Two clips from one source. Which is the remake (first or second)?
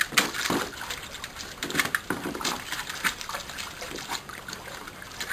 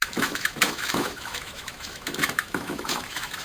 second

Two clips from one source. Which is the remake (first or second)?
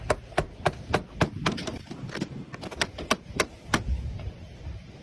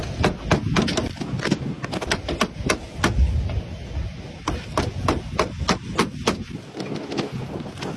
first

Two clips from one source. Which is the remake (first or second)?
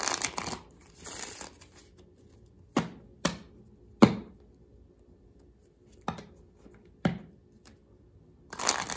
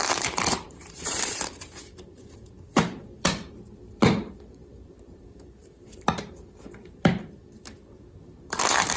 second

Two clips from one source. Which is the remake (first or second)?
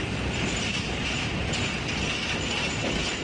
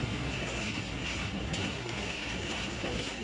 second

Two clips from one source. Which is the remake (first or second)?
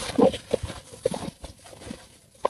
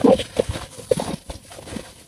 first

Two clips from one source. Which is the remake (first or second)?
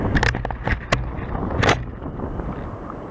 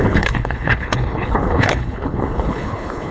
second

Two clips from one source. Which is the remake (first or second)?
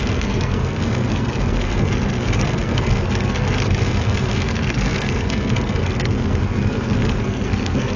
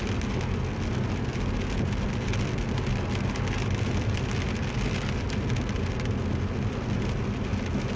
first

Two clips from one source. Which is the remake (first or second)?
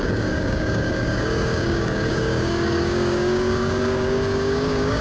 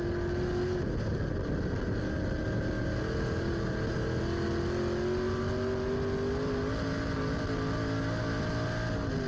first